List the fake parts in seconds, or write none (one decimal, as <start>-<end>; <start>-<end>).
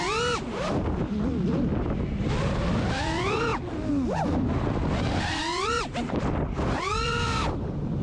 0.0-1.7; 2.2-3.5; 5.4-8.0